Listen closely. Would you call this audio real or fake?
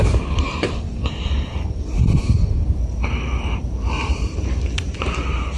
fake